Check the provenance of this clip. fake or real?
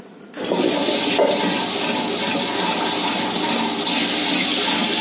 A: real